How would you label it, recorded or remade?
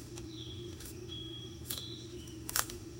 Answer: remade